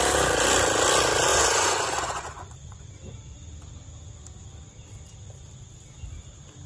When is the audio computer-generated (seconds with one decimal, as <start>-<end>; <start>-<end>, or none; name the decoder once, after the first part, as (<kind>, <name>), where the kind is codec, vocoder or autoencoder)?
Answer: 1.3-2.9 (vocoder, Vocos)